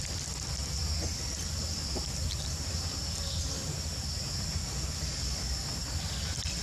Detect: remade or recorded recorded